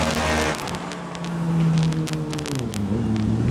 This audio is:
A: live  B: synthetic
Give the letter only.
A